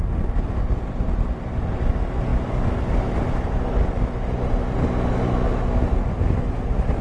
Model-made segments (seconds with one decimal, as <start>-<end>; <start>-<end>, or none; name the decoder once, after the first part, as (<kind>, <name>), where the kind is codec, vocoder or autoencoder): none